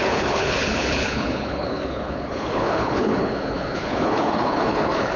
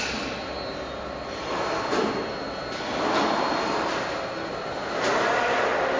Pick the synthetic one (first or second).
first